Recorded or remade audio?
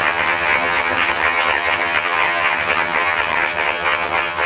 remade